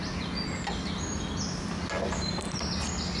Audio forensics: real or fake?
real